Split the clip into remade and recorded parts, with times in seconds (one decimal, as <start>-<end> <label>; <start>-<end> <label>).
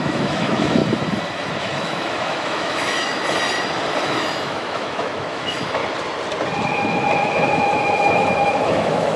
0.0-0.8 remade; 0.8-1.6 recorded; 1.6-3.1 remade; 3.1-4.0 recorded; 4.0-5.8 remade; 5.8-6.7 recorded; 6.7-9.2 remade